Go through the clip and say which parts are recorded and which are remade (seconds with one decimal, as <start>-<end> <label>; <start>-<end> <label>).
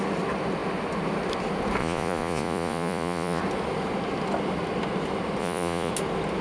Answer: 0.0-1.8 recorded; 1.8-3.4 remade; 3.4-5.4 recorded; 5.4-5.9 remade; 5.9-6.4 recorded